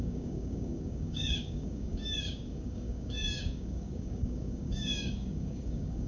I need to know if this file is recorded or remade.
remade